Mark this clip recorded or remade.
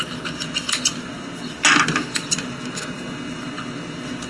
recorded